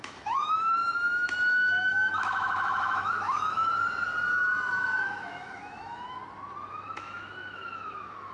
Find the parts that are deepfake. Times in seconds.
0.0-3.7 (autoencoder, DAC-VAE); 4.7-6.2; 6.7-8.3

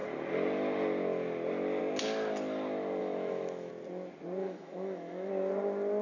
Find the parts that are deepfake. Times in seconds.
3.0-3.7 (autoencoder, DAC-VAE); 4.4-5.3

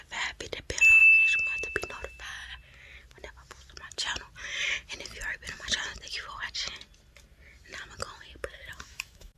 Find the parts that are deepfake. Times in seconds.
8.5-9.4 (autoencoder, DAC-VAE)

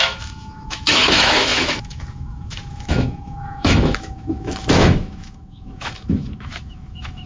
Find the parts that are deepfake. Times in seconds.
0.0-7.3 (autoencoder, DAC-VAE)

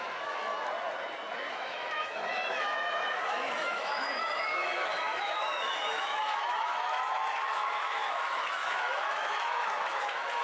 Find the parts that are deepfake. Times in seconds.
0.0-0.5 (autoencoder, DAC-VAE); 1.5-10.4

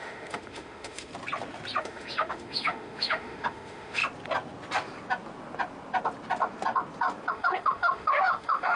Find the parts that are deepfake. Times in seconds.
0.0-1.1 (autoencoder, DAC-VAE); 1.8-4.0; 7.3-8.8